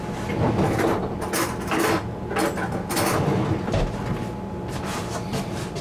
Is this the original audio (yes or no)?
yes